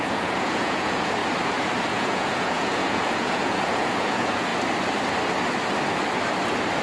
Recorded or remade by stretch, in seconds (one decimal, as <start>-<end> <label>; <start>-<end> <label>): 0.0-1.2 remade; 1.2-1.9 recorded; 1.9-4.5 remade; 4.5-6.8 recorded